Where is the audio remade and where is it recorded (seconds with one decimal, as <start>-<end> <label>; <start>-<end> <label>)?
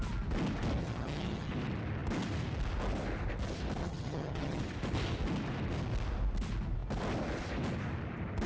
0.0-0.8 recorded; 0.8-1.5 remade; 1.5-3.8 recorded; 3.8-4.6 remade; 4.6-8.5 recorded